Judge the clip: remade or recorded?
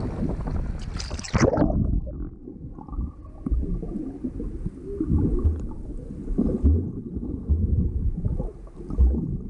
recorded